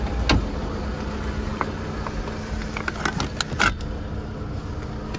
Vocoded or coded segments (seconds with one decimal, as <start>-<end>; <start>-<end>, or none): none